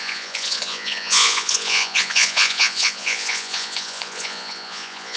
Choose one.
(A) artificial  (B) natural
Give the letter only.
A